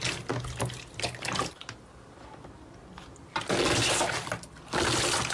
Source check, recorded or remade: recorded